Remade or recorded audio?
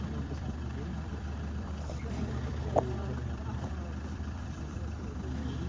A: remade